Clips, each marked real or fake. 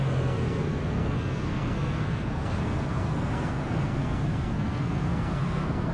fake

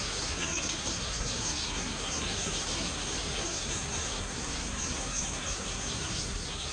fake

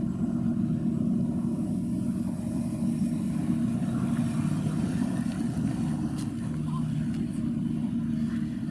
real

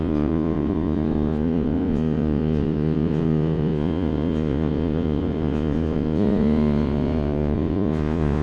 fake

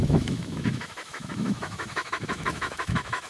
fake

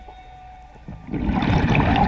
real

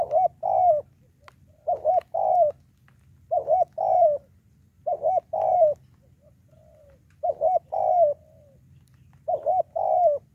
real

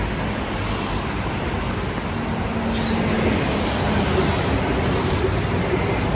real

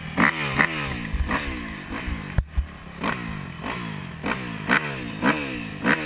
real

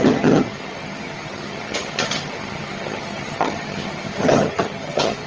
fake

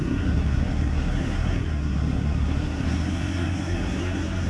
fake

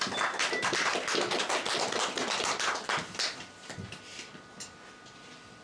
real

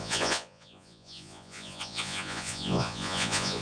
fake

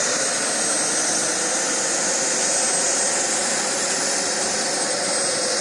real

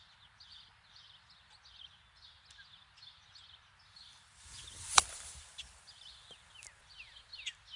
real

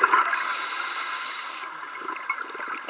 real